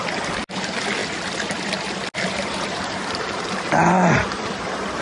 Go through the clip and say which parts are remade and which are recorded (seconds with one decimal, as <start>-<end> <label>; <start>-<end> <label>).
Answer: 0.0-2.3 recorded; 2.3-4.4 remade; 4.4-5.0 recorded